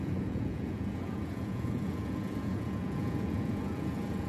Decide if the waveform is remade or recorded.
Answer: remade